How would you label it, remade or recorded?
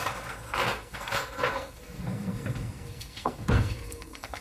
remade